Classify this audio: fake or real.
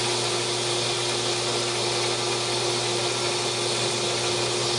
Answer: real